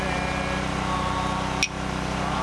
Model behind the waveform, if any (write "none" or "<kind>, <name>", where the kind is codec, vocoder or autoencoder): none